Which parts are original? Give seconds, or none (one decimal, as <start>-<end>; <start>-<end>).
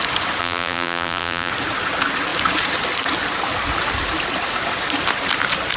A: 0.0-0.4; 1.5-5.8